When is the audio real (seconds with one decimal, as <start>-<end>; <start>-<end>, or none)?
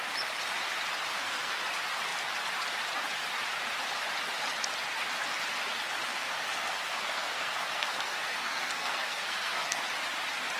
0.0-1.1; 1.6-6.1; 9.8-10.6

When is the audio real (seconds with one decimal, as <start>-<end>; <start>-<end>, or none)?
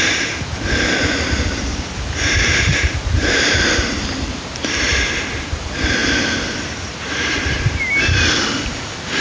0.0-1.7; 4.4-6.0; 7.8-9.2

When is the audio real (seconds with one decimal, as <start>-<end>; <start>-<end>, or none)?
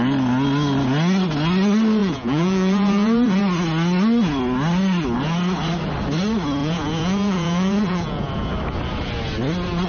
0.0-2.0; 3.4-6.6; 8.3-9.9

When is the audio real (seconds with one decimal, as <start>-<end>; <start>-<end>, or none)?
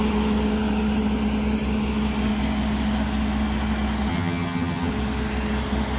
0.0-4.1; 4.9-6.0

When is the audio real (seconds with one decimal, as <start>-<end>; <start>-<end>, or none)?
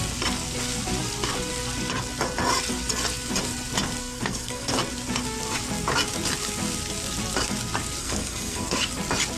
0.0-4.0; 4.7-8.0; 8.9-9.4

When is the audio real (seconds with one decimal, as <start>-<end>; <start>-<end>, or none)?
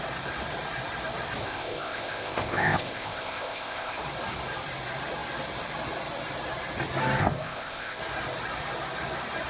0.0-1.4; 4.0-7.2; 8.0-9.5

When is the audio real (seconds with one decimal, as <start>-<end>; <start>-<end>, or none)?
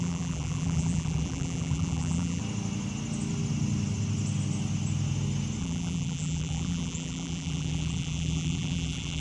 2.4-5.6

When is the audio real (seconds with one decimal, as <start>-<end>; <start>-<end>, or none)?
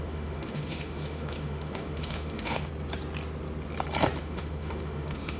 2.7-4.2